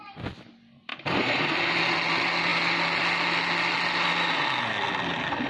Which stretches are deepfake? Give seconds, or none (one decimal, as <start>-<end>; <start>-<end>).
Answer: 0.9-1.4